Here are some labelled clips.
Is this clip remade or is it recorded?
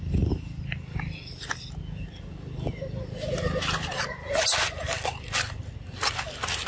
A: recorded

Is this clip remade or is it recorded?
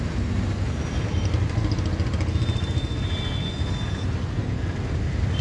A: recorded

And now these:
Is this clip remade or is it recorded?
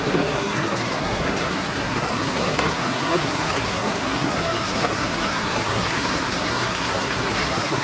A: remade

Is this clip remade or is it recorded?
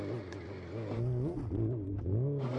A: recorded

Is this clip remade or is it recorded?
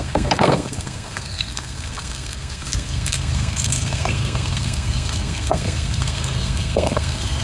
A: remade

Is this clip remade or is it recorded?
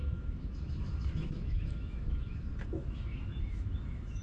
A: remade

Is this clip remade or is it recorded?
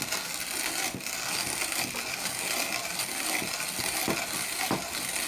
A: recorded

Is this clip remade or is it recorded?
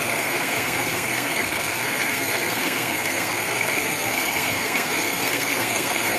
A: remade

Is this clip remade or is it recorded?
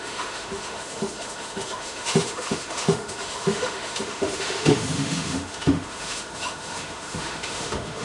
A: remade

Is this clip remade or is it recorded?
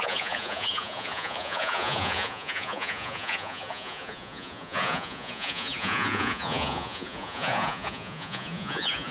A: remade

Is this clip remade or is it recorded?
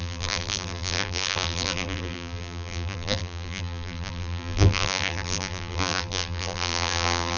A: remade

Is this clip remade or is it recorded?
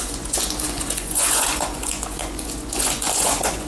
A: remade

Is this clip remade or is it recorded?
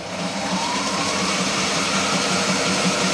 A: remade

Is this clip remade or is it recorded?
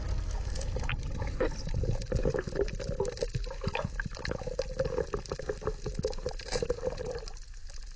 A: recorded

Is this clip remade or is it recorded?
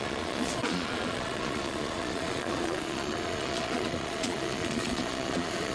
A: remade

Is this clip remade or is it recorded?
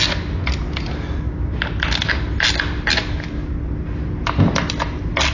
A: recorded